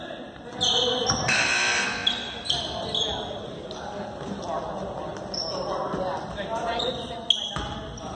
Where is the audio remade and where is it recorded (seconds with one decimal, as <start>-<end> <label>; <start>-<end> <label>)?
0.0-8.1 recorded